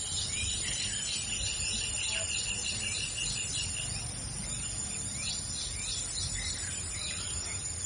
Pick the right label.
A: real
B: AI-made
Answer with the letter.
A